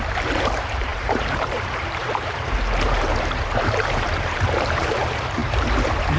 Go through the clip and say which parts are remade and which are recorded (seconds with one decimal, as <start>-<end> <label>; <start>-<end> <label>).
0.0-6.2 remade